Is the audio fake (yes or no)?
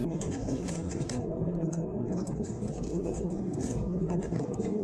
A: yes